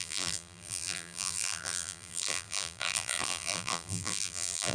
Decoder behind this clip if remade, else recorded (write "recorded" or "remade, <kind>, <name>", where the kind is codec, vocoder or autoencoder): remade, vocoder, BigVGAN v2